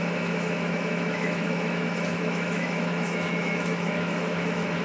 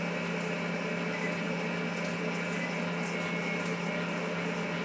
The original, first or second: second